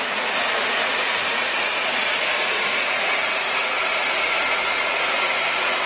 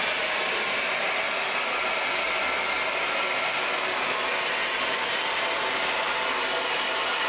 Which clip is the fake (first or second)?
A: first